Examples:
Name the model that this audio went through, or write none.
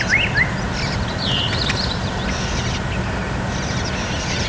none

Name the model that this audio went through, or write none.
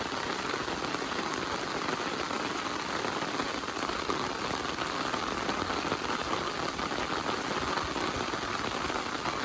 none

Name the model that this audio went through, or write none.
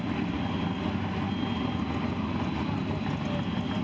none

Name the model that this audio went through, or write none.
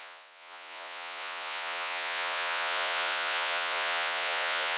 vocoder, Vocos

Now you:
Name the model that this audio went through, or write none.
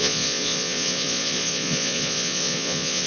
vocoder, Vocos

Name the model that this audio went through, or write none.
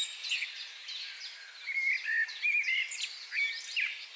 none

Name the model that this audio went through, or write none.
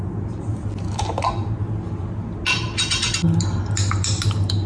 none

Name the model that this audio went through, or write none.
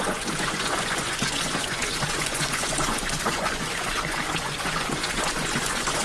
vocoder, Vocos